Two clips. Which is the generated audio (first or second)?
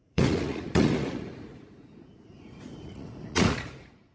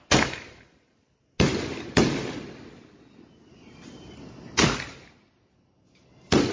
first